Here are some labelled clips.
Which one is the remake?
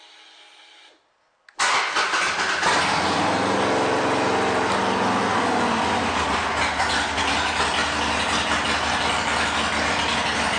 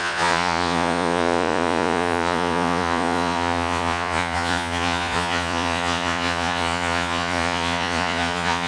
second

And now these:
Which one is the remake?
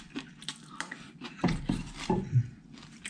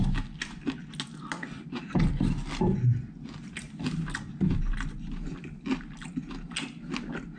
first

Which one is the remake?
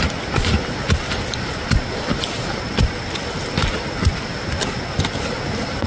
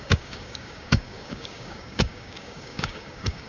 second